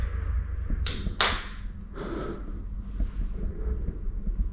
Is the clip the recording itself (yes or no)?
yes